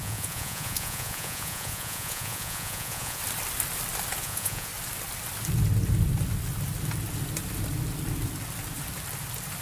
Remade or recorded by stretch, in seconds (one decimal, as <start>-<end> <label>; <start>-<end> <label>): 0.0-3.2 remade; 3.2-4.2 recorded; 4.2-4.7 remade; 4.7-9.6 recorded